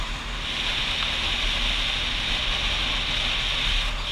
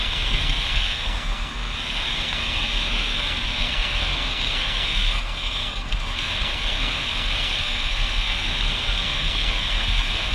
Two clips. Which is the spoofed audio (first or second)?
second